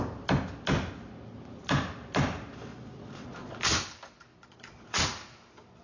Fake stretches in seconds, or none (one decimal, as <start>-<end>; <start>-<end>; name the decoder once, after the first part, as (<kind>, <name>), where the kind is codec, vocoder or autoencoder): 2.7-3.6 (vocoder, Vocos); 4.3-5.0